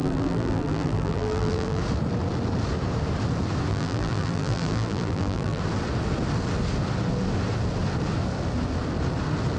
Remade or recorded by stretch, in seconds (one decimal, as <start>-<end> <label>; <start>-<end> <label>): 0.0-1.8 remade; 1.8-3.7 recorded; 3.7-5.6 remade; 5.6-9.6 recorded